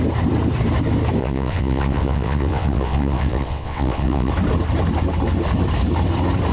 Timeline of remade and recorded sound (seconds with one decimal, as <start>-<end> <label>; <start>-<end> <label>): 0.0-1.2 recorded; 1.2-4.3 remade; 4.3-6.5 recorded